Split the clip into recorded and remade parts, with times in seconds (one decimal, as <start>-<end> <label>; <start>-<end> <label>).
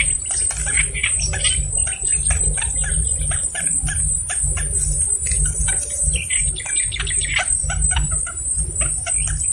0.0-1.0 recorded; 1.0-1.5 remade; 1.5-2.1 recorded; 2.1-6.5 remade; 6.5-7.6 recorded; 7.6-9.1 remade; 9.1-9.5 recorded